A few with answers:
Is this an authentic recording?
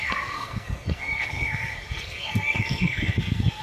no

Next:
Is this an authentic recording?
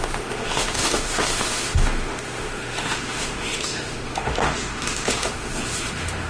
no